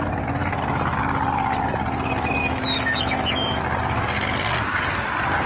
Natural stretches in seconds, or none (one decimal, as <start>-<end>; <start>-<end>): 0.0-2.4; 3.6-5.5